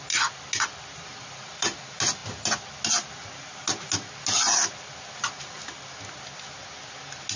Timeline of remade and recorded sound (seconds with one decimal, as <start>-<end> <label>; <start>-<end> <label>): 0.0-7.4 recorded